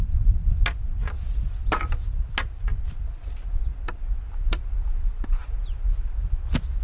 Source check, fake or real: real